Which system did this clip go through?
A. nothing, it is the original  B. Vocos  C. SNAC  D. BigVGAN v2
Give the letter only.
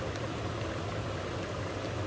A